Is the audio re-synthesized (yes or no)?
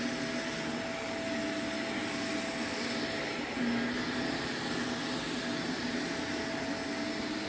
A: no